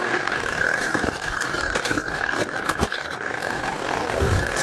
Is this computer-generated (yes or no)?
yes